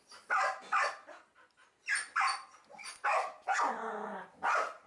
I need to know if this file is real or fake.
real